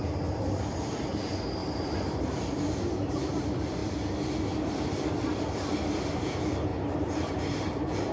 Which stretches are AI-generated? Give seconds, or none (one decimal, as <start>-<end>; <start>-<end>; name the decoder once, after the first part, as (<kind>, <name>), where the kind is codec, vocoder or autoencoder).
0.0-1.6 (vocoder, BigVGAN v2); 3.4-3.8; 6.1-8.1